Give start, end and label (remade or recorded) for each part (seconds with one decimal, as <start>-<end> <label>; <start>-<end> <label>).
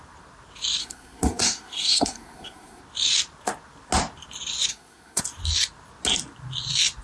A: 0.0-0.8 recorded; 0.8-2.8 remade; 2.8-4.7 recorded; 4.7-5.2 remade; 5.2-7.0 recorded